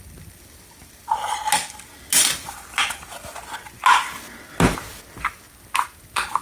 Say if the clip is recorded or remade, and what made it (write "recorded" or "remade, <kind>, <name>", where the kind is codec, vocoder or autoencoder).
recorded